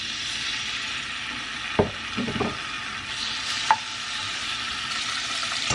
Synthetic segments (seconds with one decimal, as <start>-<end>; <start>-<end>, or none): none